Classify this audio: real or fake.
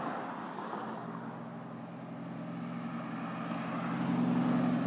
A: real